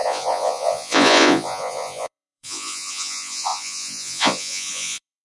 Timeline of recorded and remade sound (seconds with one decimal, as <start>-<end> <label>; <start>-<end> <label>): 0.0-5.2 remade